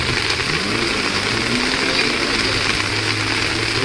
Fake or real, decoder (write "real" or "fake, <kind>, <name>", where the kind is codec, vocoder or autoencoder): real